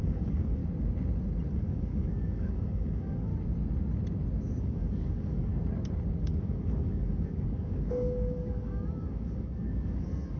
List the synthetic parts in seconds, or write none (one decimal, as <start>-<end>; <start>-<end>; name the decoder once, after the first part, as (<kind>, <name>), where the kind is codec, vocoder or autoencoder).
0.0-0.6 (codec, DAC); 1.5-3.3; 4.6-5.5; 6.2-10.4